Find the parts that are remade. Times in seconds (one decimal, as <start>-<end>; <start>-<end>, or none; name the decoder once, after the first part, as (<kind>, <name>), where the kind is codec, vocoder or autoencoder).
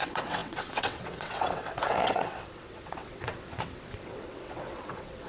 0.0-5.3 (vocoder, WaveNeXt)